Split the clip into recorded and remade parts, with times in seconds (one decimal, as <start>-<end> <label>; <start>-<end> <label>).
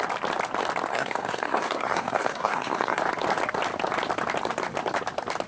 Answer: 0.0-0.9 recorded; 0.9-3.0 remade; 3.0-5.5 recorded